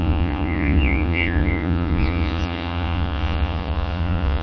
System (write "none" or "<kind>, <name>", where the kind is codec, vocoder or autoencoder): vocoder, Vocos